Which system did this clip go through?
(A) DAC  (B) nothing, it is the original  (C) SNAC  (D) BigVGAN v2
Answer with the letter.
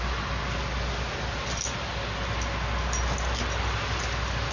B